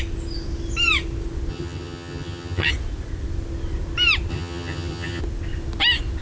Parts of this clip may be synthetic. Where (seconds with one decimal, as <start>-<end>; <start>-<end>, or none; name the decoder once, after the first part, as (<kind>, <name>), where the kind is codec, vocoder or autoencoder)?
1.5-2.7 (vocoder, HiFi-GAN); 4.3-5.2